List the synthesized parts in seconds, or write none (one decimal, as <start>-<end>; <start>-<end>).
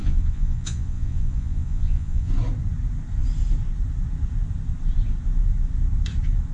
0.0-2.3